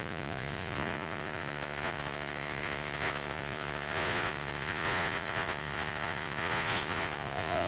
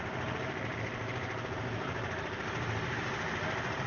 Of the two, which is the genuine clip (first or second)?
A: second